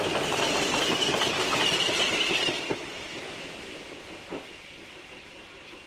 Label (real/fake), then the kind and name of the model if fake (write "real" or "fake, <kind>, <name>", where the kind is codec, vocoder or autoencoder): real